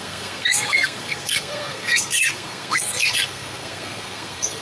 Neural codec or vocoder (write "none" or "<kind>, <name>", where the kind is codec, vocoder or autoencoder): codec, SNAC